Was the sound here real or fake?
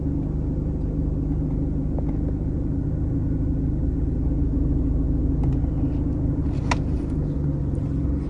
real